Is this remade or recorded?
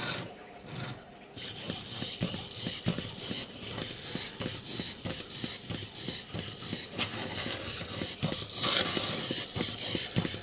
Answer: recorded